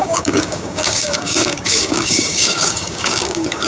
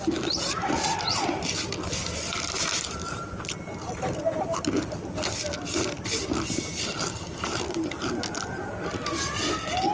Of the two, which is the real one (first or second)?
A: second